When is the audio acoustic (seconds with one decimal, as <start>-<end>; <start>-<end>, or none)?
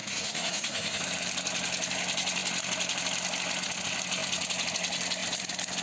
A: 1.0-5.8